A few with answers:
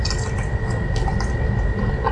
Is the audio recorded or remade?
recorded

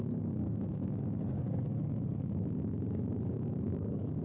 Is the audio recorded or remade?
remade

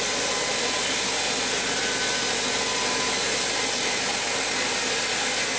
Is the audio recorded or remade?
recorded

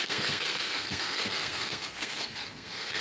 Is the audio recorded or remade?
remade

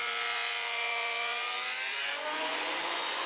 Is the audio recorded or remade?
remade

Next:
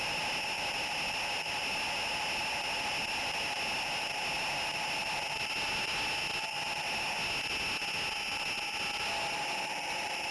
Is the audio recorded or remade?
recorded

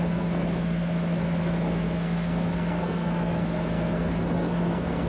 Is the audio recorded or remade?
remade